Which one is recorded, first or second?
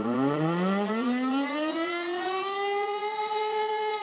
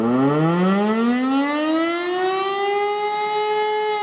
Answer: second